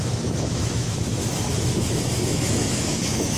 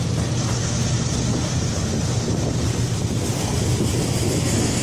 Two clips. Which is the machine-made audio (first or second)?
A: first